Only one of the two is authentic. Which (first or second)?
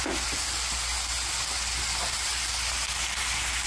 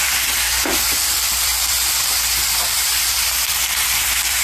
first